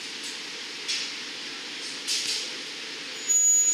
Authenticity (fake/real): real